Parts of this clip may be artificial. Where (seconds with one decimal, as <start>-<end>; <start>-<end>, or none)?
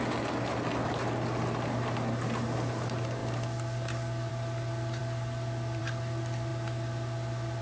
none